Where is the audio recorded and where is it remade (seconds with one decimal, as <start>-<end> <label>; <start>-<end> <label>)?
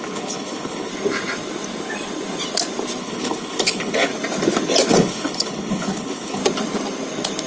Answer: 0.0-0.9 remade; 0.9-3.0 recorded; 3.0-4.1 remade; 4.1-4.9 recorded; 4.9-6.4 remade; 6.4-7.5 recorded